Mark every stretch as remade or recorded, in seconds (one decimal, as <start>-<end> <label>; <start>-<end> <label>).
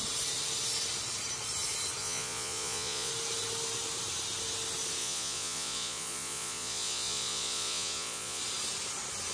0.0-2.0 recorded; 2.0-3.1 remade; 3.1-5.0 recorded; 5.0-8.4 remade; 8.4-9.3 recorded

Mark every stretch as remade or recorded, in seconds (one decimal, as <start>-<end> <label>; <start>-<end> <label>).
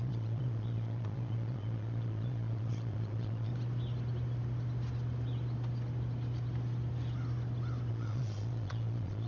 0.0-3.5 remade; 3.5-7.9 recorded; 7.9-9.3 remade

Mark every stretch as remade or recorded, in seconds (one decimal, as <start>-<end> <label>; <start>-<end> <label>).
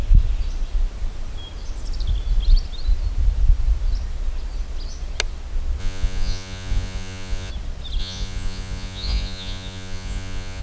0.0-5.8 recorded; 5.8-7.5 remade; 7.5-8.0 recorded; 8.0-10.6 remade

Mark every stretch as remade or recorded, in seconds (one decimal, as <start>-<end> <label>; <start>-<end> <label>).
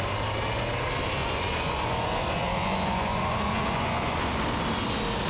0.0-1.2 recorded; 1.2-4.4 remade; 4.4-5.3 recorded